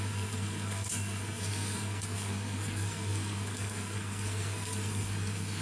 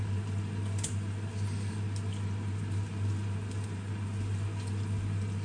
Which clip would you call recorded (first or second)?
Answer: second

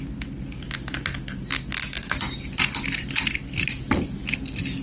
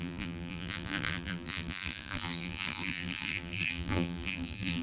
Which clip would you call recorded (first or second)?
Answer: first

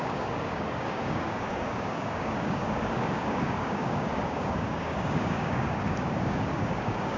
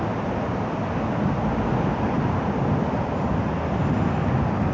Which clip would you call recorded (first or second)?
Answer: second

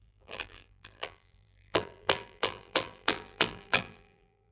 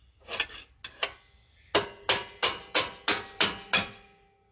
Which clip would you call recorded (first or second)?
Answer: second